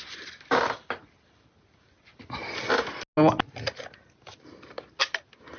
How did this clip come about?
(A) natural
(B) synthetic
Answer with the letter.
A